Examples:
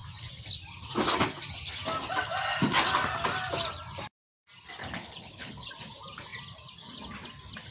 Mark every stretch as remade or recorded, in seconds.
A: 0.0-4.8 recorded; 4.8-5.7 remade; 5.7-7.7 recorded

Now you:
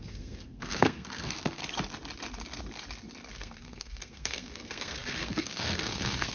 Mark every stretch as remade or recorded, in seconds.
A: 0.0-1.6 remade; 1.6-3.3 recorded; 3.3-6.3 remade

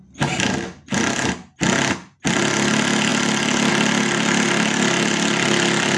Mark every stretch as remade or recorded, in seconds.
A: 0.0-6.0 recorded

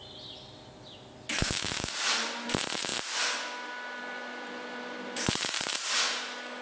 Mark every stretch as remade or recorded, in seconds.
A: 0.0-1.3 recorded; 1.3-1.9 remade; 1.9-6.6 recorded